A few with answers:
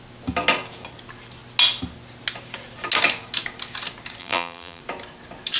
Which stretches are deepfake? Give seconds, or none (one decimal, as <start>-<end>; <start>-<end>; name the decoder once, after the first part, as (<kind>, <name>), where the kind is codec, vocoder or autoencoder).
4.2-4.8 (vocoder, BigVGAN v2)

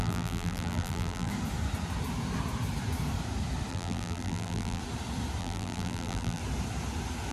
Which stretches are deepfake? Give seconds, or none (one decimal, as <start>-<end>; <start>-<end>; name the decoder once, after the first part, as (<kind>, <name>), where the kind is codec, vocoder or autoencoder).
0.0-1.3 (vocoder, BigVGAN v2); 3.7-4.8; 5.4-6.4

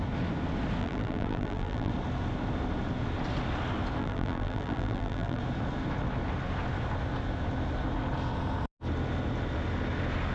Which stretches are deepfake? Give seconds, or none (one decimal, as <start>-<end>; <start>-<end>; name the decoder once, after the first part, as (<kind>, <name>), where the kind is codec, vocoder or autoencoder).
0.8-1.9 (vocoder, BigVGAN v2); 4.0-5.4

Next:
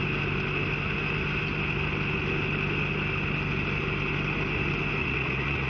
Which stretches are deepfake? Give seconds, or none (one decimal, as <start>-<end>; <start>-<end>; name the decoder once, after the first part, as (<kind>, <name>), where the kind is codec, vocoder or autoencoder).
5.0-5.7 (vocoder, Vocos)